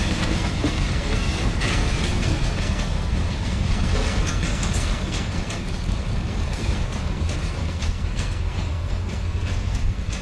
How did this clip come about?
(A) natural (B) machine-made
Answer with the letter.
B